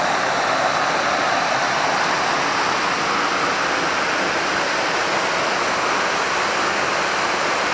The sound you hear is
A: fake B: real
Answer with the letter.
B